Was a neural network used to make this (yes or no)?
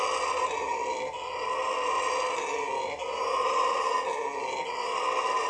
no